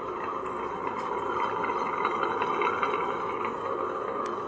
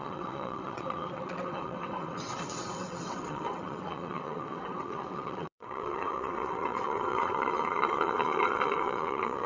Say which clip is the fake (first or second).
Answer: second